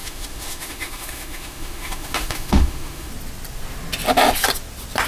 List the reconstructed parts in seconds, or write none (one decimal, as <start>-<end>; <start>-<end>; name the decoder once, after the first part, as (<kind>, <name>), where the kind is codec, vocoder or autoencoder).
0.0-3.1 (autoencoder, DAC-VAE)